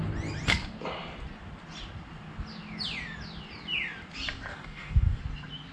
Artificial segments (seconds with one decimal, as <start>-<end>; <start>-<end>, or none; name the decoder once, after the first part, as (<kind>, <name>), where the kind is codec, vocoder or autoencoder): 4.5-5.2 (codec, DAC)